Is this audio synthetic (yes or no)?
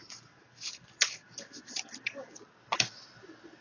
no